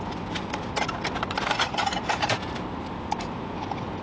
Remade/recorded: recorded